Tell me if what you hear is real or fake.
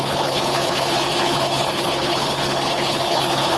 fake